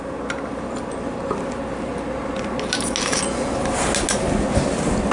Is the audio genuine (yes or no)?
yes